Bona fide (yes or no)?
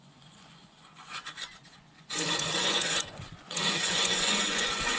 no